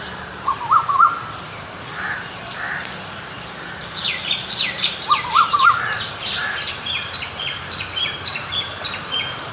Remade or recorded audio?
remade